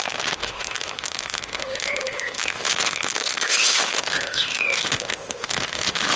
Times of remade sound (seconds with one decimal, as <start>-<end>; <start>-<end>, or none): 0.0-6.2